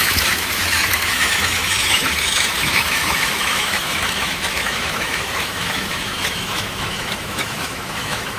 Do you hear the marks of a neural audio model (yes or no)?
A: yes